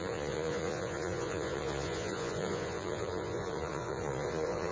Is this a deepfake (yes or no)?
yes